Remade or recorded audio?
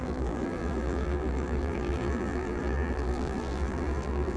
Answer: remade